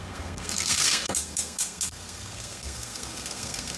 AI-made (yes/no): yes